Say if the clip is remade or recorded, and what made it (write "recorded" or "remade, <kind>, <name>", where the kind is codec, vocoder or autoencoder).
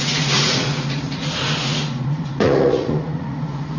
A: remade, vocoder, Vocos